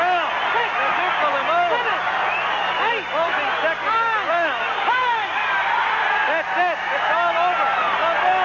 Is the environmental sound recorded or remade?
recorded